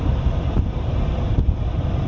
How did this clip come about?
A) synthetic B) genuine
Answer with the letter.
B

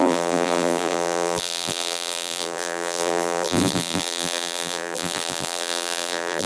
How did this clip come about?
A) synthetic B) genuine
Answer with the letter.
A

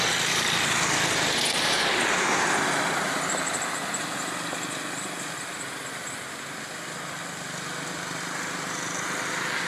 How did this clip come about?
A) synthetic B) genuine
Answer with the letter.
B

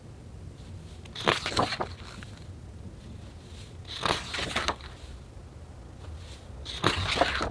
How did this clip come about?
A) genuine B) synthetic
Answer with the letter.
A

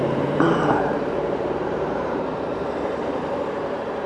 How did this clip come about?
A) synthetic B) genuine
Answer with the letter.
A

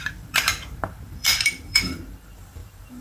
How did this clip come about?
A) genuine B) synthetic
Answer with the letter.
B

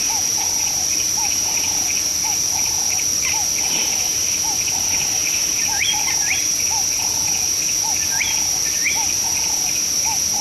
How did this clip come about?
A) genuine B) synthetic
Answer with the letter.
B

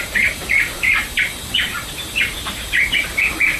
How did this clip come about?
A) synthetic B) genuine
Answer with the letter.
A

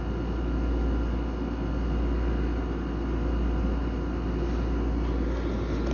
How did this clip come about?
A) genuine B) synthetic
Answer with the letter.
A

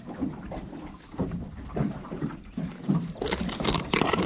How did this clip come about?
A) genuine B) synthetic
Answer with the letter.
B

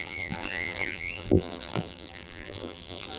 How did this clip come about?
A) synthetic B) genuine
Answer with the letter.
A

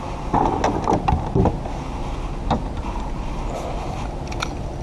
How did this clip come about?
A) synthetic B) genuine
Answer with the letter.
B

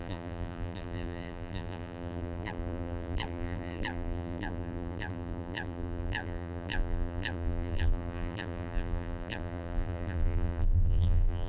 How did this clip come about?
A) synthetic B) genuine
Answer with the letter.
A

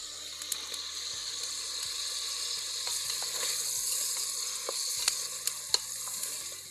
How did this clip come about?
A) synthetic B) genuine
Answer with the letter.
B